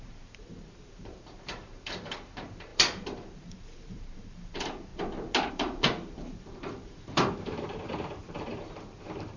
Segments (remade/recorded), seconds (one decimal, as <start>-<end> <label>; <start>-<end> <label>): 0.0-4.9 remade; 4.9-5.5 recorded; 5.5-9.4 remade